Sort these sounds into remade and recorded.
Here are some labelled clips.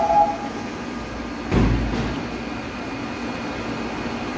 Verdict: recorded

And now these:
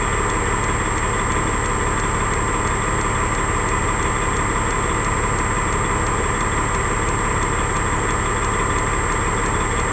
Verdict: recorded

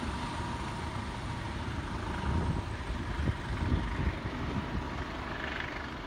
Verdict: recorded